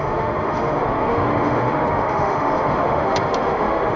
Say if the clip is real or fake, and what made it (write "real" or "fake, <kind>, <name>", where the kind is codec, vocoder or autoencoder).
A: fake, autoencoder, DAC-VAE